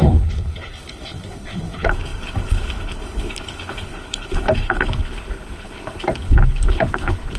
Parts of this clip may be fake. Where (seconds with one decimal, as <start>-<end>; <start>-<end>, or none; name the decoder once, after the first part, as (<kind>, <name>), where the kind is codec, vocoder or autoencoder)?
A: 0.0-7.4 (codec, HILCodec)